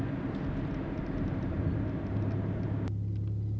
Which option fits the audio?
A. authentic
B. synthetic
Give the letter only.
A